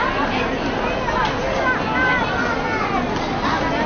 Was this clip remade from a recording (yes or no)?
no